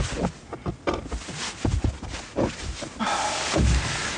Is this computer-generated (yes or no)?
no